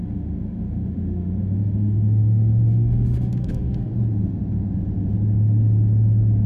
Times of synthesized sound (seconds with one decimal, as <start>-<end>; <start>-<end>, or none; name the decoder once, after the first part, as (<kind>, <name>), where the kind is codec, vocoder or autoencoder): 0.0-3.9 (autoencoder, DAC-VAE)